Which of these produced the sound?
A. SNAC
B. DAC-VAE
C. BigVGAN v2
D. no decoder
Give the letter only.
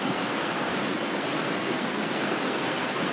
A